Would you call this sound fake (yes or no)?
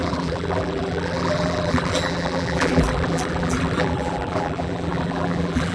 yes